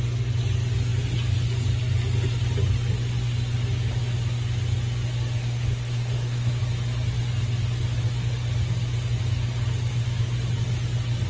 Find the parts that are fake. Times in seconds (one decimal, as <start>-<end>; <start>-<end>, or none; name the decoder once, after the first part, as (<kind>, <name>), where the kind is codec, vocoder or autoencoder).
5.4-6.5 (codec, SNAC)